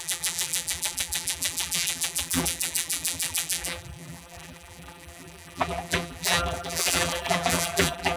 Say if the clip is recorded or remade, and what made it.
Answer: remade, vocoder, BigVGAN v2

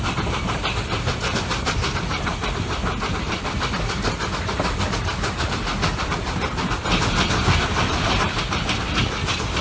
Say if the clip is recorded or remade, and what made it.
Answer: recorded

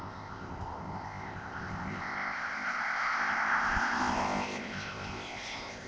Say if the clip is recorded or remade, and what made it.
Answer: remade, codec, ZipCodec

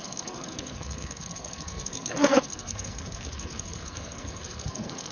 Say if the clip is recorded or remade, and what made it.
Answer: remade, codec, SNAC